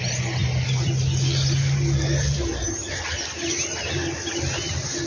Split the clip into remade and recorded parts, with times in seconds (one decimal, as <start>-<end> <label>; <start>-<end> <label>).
0.0-5.1 recorded